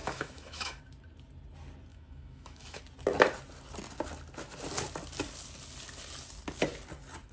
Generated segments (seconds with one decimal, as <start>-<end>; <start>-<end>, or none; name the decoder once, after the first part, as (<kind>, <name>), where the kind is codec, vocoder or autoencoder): 0.0-0.8 (autoencoder, DAC-VAE); 1.9-2.8